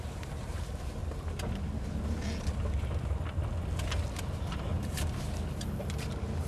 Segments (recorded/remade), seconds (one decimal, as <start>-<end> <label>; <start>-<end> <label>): 0.0-1.0 remade; 1.0-4.2 recorded; 4.2-4.7 remade; 4.7-6.5 recorded